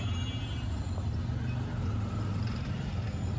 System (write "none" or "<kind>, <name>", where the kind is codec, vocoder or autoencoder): none